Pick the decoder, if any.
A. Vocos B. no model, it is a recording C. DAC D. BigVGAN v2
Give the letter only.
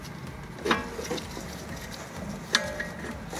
B